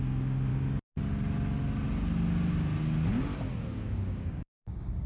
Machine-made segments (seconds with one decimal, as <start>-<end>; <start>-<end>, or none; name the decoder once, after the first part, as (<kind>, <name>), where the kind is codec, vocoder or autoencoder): 0.0-0.5 (codec, DAC); 3.6-5.1